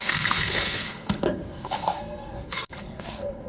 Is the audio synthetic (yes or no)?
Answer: yes